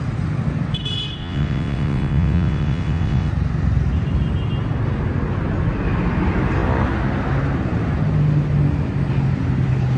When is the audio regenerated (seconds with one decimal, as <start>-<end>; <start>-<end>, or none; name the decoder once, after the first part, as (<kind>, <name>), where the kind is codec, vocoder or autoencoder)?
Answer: 1.2-3.3 (vocoder, WaveNeXt)